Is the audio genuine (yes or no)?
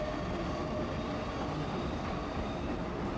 yes